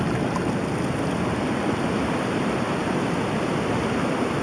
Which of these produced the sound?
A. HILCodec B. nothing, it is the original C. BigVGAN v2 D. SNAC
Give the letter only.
B